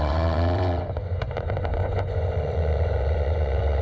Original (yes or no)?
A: no